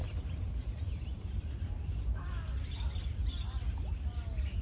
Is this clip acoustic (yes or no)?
yes